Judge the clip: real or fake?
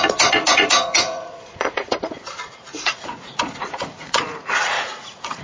fake